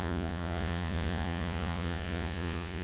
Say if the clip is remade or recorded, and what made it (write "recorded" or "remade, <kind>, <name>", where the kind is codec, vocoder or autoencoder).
remade, vocoder, Vocos